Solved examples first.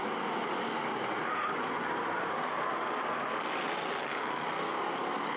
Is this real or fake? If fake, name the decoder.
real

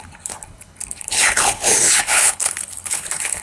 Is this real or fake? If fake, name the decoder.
fake, codec, HILCodec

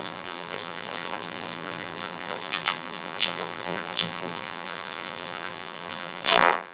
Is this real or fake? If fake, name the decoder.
fake, vocoder, BigVGAN v2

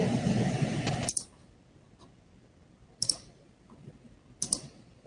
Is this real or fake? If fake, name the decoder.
real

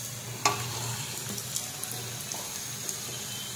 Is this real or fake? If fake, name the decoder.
real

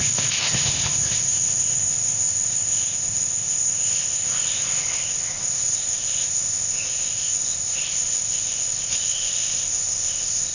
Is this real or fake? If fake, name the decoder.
fake, codec, ZipCodec